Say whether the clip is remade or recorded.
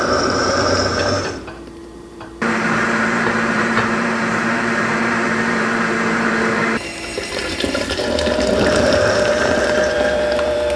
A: remade